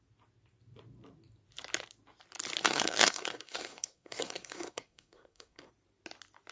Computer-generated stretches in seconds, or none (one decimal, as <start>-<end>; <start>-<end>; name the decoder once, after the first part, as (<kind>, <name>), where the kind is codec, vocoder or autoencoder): 2.6-5.7 (codec, SNAC)